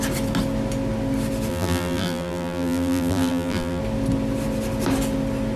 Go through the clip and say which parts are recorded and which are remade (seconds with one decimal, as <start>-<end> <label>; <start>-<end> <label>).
0.0-1.5 recorded; 1.5-3.8 remade; 3.8-5.6 recorded